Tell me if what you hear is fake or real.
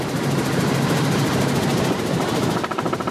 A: real